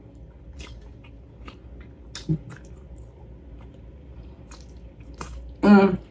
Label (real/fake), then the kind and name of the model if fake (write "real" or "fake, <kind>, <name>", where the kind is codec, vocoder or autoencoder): real